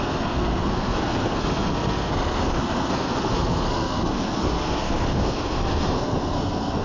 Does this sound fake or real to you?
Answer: fake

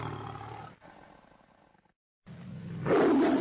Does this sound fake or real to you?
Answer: real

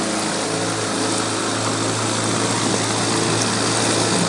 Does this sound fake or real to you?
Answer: real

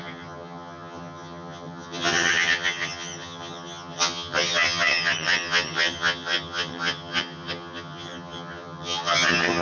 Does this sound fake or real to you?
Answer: fake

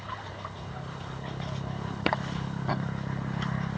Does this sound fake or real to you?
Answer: fake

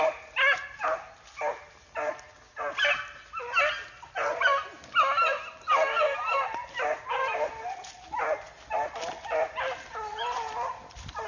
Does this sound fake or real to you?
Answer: real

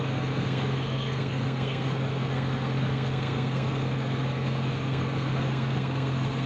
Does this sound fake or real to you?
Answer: fake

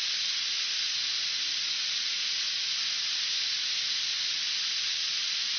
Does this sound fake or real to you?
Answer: real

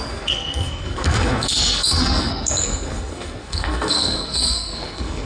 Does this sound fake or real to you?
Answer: fake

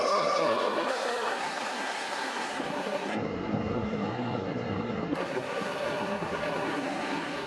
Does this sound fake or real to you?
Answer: fake